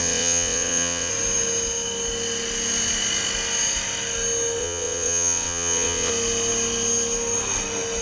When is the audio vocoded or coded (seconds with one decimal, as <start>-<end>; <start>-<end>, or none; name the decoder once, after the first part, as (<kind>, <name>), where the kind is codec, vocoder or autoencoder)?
0.0-1.1 (vocoder, WaveNeXt); 4.6-6.1